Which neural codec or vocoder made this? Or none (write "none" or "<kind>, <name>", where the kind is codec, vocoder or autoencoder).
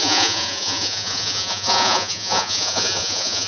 vocoder, Vocos